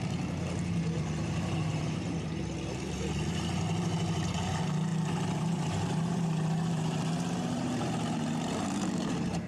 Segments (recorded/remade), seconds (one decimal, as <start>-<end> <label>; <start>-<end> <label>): 0.0-4.9 remade; 4.9-5.4 recorded; 5.4-9.5 remade